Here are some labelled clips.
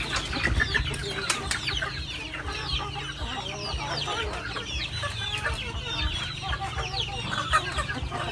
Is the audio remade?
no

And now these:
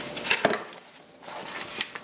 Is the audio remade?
no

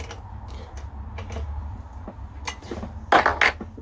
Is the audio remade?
no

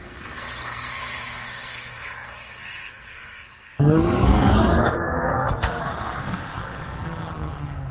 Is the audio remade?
yes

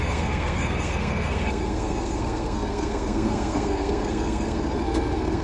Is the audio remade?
yes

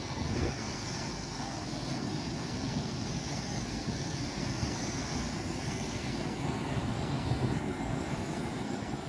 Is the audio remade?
yes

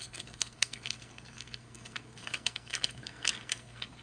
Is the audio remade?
yes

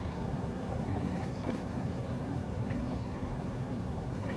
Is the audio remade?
yes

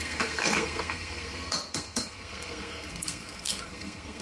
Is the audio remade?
yes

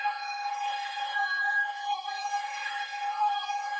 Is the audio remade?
yes